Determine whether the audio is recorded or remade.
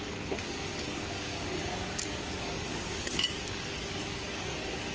remade